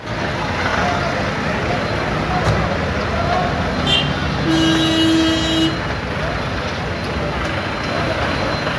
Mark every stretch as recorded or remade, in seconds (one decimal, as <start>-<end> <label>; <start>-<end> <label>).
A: 0.0-8.8 recorded